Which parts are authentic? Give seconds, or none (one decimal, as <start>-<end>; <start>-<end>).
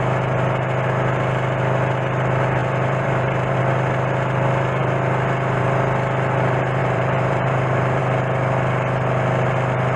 0.0-2.6; 3.6-6.8; 8.0-10.0